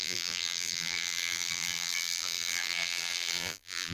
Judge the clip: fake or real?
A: fake